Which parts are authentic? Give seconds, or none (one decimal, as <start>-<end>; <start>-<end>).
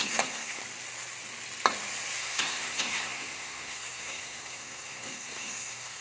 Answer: 0.6-2.2